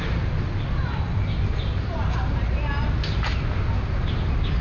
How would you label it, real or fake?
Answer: real